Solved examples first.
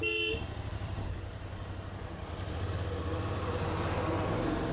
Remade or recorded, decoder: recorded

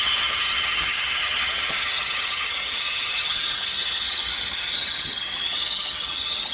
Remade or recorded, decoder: remade, vocoder, HiFi-GAN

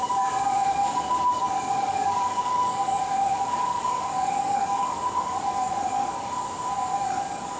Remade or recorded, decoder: remade, codec, DAC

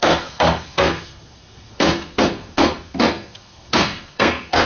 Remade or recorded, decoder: remade, codec, SNAC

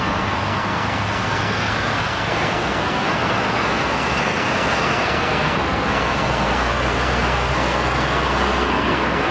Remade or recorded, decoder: remade, codec, SNAC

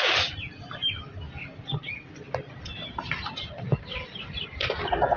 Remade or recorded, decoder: recorded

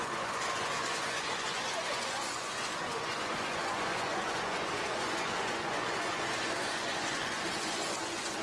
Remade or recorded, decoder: remade, vocoder, Vocos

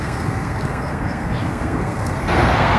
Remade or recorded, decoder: remade, codec, SNAC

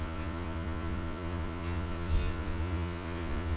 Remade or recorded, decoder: remade, vocoder, Vocos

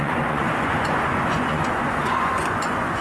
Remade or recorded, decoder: remade, vocoder, Vocos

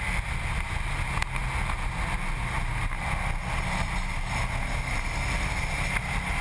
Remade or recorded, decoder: recorded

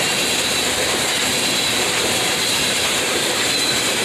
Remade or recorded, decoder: remade, vocoder, BigVGAN v2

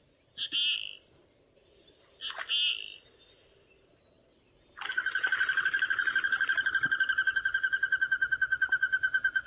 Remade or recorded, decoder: recorded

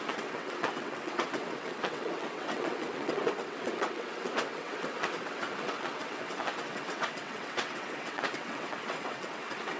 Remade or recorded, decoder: remade, vocoder, WaveNeXt